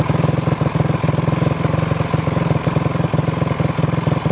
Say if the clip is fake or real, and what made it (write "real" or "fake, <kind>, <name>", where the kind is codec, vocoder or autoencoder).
real